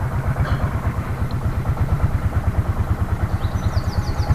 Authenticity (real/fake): real